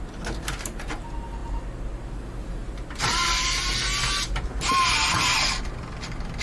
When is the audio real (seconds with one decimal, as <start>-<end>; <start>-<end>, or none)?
0.0-6.4